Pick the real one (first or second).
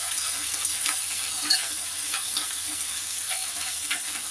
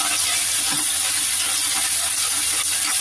second